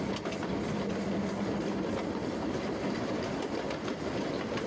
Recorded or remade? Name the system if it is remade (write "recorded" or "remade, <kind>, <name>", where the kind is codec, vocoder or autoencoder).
recorded